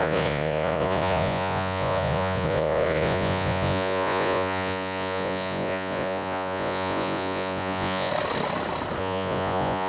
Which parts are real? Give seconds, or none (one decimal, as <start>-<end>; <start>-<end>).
8.1-9.0